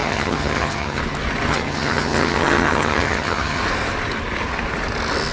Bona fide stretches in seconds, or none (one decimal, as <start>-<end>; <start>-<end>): 1.0-1.5; 3.6-5.3